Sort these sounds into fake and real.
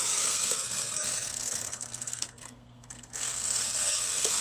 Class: fake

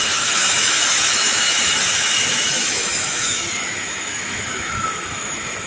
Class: fake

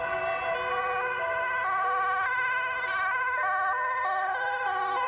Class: real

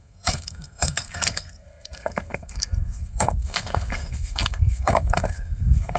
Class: fake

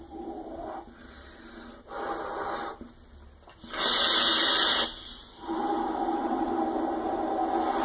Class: real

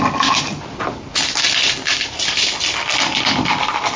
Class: real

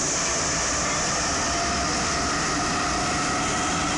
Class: real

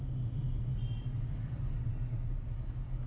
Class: real